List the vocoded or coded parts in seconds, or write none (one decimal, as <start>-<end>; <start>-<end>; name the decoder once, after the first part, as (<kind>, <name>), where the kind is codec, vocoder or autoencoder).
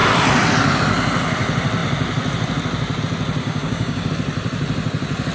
3.4-4.1 (codec, DAC)